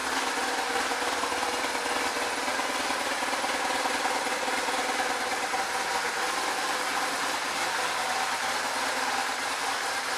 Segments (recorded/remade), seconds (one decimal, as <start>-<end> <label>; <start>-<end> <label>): 0.0-10.2 recorded